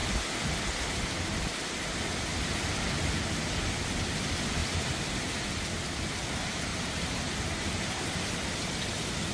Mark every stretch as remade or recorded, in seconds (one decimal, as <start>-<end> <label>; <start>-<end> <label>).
0.0-1.7 remade; 1.7-2.3 recorded; 2.3-3.7 remade; 3.7-4.6 recorded; 4.6-5.6 remade; 5.6-6.7 recorded; 6.7-7.4 remade; 7.4-9.3 recorded